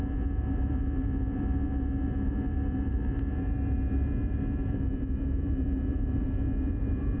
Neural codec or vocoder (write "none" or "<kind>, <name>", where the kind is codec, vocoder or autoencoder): vocoder, BigVGAN v2